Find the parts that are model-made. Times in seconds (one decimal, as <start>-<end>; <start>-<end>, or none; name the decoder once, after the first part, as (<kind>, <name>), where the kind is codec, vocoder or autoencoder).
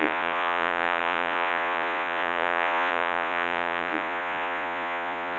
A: 0.0-5.4 (vocoder, Vocos)